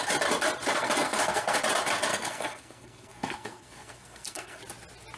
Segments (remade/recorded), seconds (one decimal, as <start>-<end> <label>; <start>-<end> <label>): 0.0-0.7 recorded; 0.7-1.6 remade; 1.6-2.1 recorded; 2.1-4.6 remade; 4.6-5.2 recorded